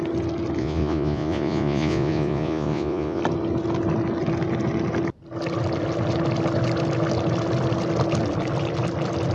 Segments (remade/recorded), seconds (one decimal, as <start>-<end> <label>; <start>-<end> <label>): 0.0-0.6 recorded; 0.6-3.2 remade; 3.2-9.3 recorded